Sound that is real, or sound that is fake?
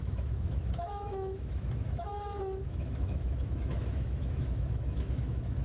fake